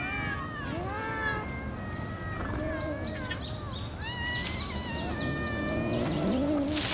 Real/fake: real